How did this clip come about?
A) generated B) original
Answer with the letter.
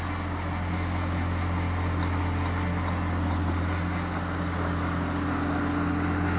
B